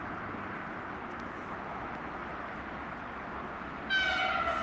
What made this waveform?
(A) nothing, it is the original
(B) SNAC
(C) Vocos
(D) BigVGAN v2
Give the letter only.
A